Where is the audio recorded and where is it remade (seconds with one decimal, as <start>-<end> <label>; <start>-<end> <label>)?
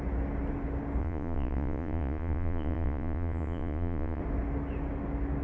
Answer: 0.0-1.0 recorded; 1.0-4.2 remade; 4.2-5.4 recorded